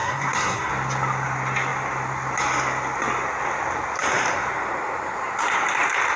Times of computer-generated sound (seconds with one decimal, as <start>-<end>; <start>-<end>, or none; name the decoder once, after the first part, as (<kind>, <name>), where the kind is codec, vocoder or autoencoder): 0.0-0.7 (codec, SNAC)